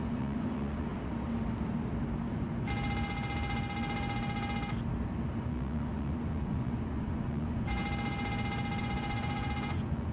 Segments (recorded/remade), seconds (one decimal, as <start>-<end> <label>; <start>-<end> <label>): 0.0-0.9 remade; 0.9-5.4 recorded; 5.4-7.8 remade; 7.8-8.8 recorded; 8.8-10.1 remade